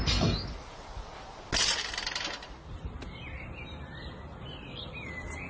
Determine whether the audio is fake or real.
real